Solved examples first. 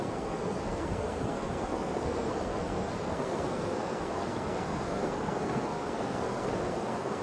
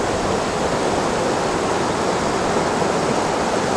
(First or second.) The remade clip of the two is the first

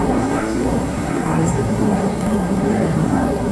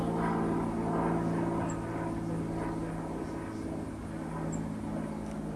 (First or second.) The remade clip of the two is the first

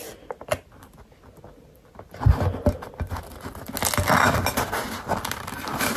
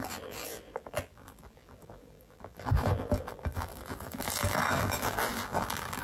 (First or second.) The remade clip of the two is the second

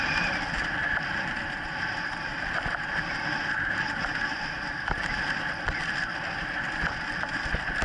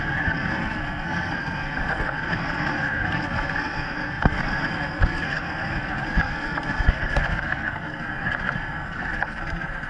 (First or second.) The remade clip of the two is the second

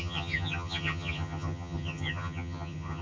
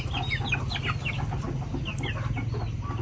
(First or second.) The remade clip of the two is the first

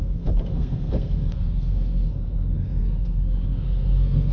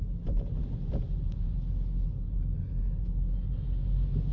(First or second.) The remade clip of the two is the first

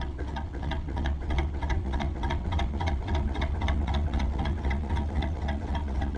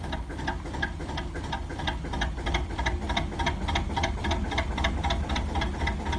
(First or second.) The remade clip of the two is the first